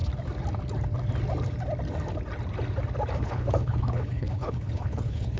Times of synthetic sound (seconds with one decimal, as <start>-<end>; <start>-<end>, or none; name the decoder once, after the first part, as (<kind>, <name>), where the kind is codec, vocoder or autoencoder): 3.2-5.4 (codec, HILCodec)